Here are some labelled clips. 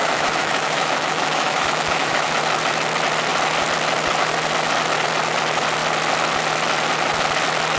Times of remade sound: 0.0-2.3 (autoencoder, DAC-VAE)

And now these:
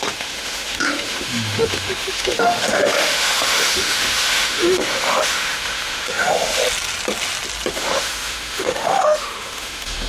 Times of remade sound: 0.0-6.6 (autoencoder, DAC-VAE); 7.7-10.1

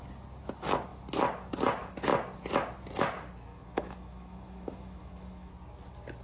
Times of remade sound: 3.5-5.5 (autoencoder, DAC-VAE)